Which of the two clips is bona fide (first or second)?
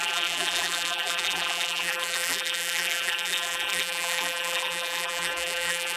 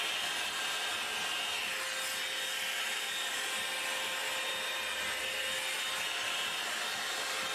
second